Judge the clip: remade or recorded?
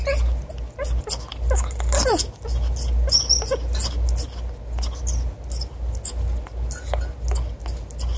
recorded